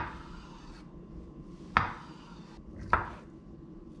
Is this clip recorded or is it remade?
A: recorded